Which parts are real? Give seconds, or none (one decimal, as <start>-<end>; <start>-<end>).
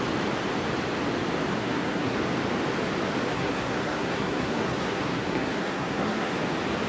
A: 0.0-1.6; 2.2-3.3; 6.4-6.9